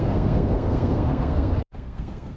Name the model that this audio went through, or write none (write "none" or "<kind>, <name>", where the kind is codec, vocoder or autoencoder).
codec, SNAC